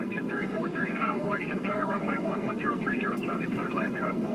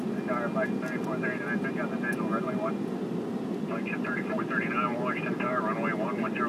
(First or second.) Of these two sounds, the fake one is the first